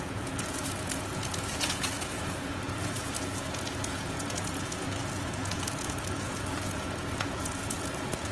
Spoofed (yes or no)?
yes